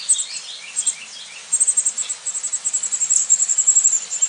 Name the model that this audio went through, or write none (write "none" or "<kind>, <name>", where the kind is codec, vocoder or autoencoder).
none